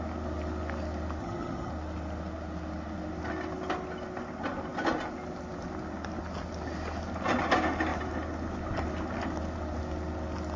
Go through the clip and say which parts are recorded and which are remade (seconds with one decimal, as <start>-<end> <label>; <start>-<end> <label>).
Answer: 0.0-1.2 recorded; 1.2-1.7 remade; 1.7-10.6 recorded